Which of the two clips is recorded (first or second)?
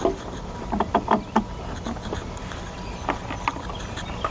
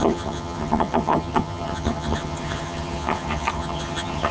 first